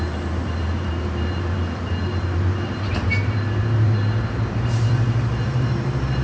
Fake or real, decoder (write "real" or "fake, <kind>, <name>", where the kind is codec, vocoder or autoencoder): fake, vocoder, BigVGAN v2